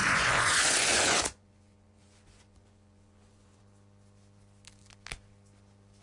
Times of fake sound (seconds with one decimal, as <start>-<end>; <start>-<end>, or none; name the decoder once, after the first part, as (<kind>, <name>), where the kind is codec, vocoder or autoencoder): 0.0-3.6 (vocoder, Vocos)

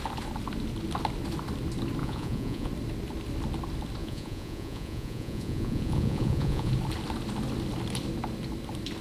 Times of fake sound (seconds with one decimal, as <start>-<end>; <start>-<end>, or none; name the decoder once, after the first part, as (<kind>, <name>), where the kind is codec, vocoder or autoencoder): 2.0-2.7 (vocoder, Vocos); 4.0-6.7

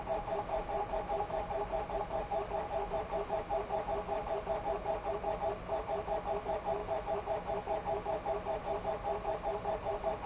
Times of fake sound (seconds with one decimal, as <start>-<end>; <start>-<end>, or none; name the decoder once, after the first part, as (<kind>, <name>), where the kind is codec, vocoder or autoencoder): none